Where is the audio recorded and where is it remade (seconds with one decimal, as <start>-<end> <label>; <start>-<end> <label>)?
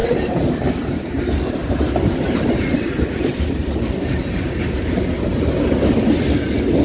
0.0-1.2 remade; 1.2-1.6 recorded; 1.6-5.6 remade; 5.6-6.8 recorded